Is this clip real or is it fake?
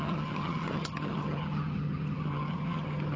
fake